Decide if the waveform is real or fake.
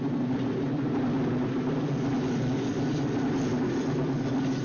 real